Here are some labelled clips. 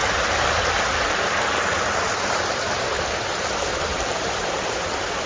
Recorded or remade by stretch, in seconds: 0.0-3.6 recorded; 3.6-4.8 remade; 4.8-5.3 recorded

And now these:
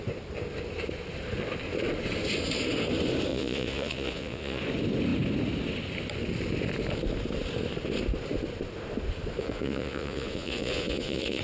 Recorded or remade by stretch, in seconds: 0.0-3.3 recorded; 3.3-4.6 remade; 4.6-9.4 recorded; 9.4-11.4 remade

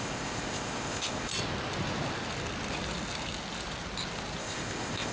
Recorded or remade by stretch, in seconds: 0.0-1.3 remade; 1.3-4.4 recorded; 4.4-5.1 remade

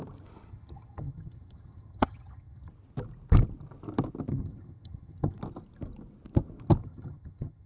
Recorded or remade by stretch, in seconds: 0.0-0.5 recorded; 0.5-2.7 remade; 2.7-4.3 recorded; 4.3-5.4 remade; 5.4-6.8 recorded; 6.8-7.7 remade

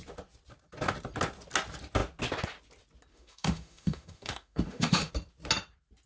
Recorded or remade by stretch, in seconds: 0.0-3.1 recorded; 3.1-5.1 remade; 5.1-6.1 recorded